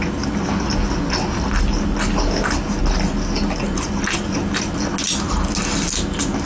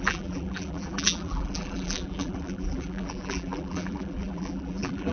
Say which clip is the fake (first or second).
second